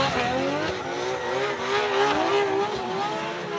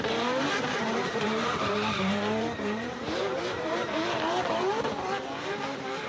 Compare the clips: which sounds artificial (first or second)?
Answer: second